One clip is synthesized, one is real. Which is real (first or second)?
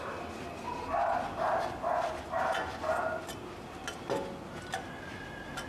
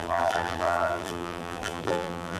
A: first